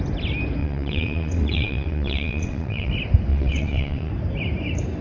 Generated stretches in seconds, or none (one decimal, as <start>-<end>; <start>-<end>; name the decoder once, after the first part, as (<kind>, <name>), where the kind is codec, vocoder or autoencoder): 0.6-2.9 (vocoder, WaveNeXt); 3.3-4.1